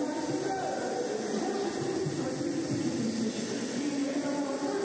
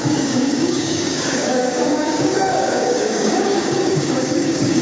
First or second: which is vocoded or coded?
second